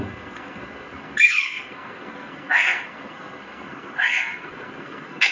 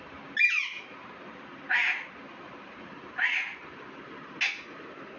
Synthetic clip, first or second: first